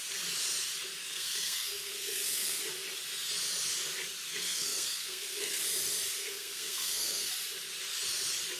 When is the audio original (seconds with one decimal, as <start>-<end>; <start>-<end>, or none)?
0.0-1.0; 2.6-4.3; 5.6-6.2; 7.3-8.6